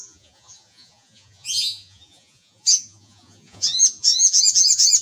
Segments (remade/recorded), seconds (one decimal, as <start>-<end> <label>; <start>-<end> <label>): 0.0-5.0 remade